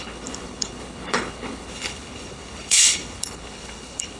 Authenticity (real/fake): fake